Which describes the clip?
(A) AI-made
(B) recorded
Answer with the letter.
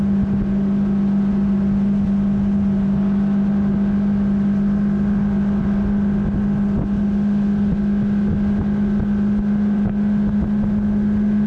B